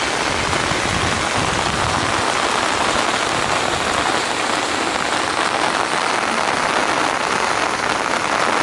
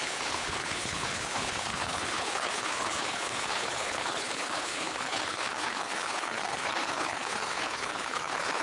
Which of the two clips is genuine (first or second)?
first